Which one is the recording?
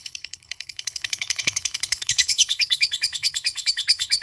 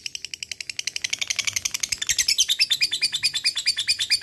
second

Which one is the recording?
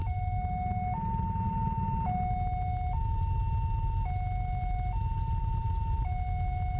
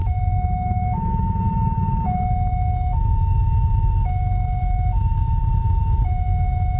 first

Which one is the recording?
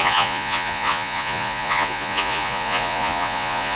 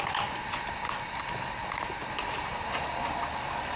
second